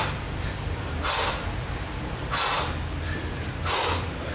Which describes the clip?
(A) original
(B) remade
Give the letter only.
A